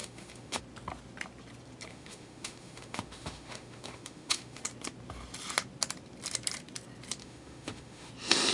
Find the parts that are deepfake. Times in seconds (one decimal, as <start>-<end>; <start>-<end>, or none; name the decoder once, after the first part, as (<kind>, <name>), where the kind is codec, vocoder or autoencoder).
0.0-0.6 (autoencoder, DAC-VAE); 1.9-4.6; 7.2-8.1

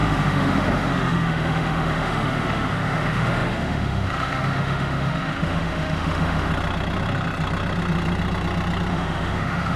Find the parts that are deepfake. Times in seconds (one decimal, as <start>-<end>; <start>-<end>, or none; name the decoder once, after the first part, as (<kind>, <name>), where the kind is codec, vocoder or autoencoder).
0.0-6.5 (autoencoder, DAC-VAE); 8.9-9.8

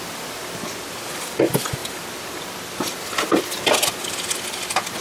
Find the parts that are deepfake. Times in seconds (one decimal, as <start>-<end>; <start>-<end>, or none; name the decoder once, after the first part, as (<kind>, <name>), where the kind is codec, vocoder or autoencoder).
none

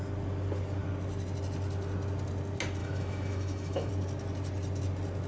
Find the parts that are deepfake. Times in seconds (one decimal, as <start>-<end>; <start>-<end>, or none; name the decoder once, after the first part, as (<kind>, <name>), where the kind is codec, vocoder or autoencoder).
2.8-3.9 (autoencoder, DAC-VAE)

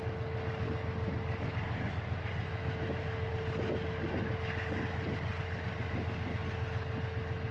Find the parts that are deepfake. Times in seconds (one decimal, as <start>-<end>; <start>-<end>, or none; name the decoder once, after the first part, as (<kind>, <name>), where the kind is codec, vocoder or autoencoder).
2.5-3.3 (autoencoder, DAC-VAE)